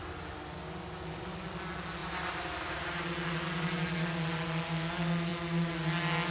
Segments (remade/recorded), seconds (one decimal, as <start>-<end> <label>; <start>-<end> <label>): 0.0-2.0 recorded; 2.0-3.0 remade; 3.0-6.3 recorded